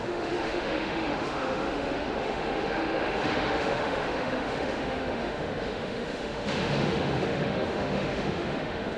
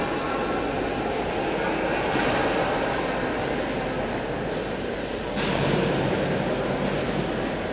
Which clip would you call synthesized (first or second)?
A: first